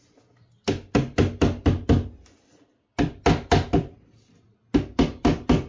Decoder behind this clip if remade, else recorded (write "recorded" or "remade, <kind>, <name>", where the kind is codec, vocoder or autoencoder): recorded